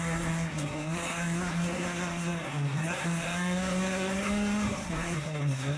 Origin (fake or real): fake